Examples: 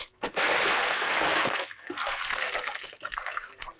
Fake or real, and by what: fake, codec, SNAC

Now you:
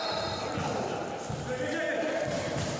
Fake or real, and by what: real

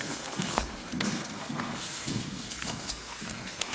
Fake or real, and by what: fake, codec, SNAC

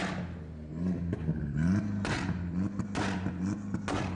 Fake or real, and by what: real